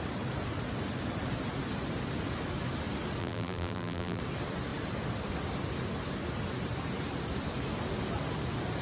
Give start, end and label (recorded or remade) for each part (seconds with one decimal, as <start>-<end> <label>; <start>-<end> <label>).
0.0-3.2 recorded; 3.2-4.2 remade; 4.2-8.8 recorded